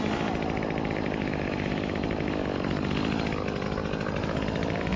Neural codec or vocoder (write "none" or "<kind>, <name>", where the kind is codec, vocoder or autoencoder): vocoder, BigVGAN v2